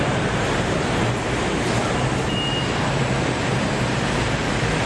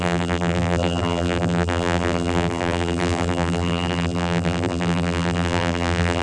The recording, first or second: first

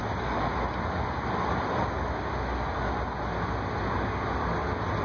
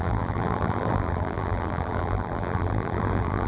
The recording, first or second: first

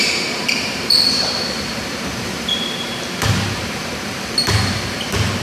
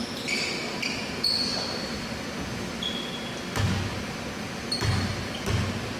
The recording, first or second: second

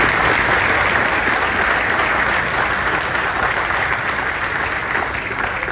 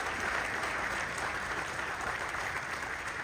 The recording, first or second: first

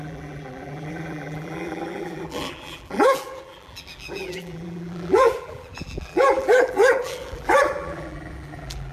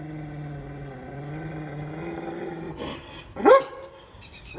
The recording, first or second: second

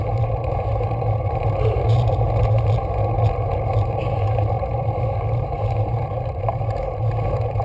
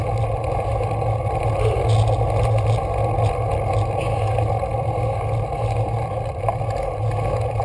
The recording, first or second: second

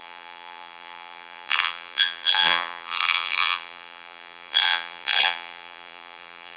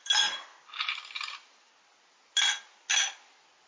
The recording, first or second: second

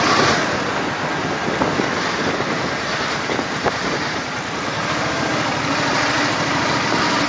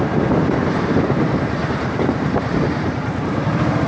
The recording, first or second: first